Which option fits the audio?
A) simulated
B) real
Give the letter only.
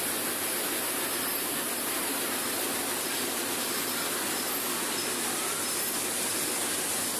B